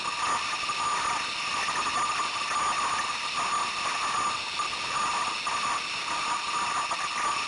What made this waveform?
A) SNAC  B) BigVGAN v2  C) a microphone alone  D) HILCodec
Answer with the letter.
C